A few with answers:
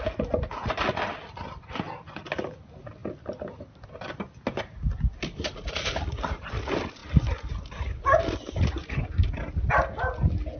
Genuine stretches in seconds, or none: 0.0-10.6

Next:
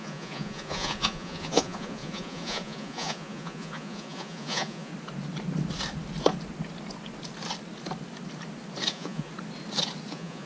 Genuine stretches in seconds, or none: 4.9-8.9; 9.3-10.1

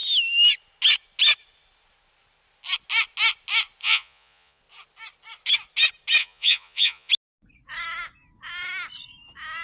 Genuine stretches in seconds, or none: 0.0-3.8; 4.6-6.2; 7.1-9.6

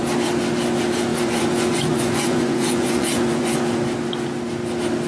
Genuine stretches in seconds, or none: 0.0-1.1; 3.6-5.1

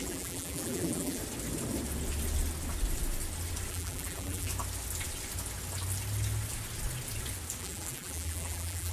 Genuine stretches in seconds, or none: 1.2-3.7; 4.5-7.6

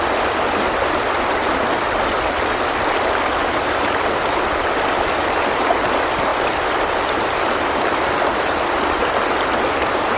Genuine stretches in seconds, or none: 0.0-10.2